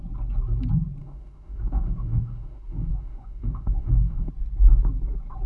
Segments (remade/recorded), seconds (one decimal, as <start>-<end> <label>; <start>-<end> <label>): 0.0-1.0 recorded; 1.0-4.3 remade; 4.3-5.5 recorded